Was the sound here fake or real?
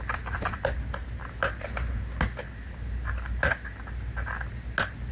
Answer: real